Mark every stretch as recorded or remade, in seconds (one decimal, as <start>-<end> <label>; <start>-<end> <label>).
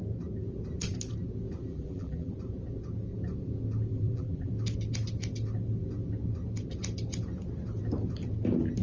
0.0-1.7 recorded; 1.7-2.3 remade; 2.3-3.9 recorded; 3.9-4.5 remade; 4.5-8.8 recorded